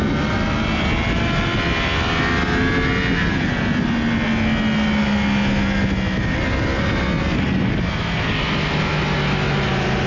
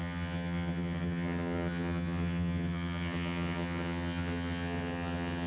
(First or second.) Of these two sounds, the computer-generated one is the second